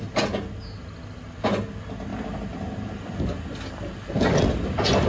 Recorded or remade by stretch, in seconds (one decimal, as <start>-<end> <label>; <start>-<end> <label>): 0.0-5.1 recorded

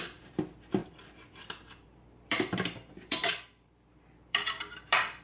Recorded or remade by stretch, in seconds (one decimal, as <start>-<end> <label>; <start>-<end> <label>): 0.0-0.8 remade; 0.8-1.6 recorded; 1.6-5.2 remade